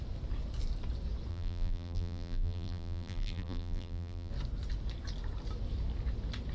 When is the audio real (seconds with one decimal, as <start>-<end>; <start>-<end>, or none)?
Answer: 0.0-1.3; 4.3-6.5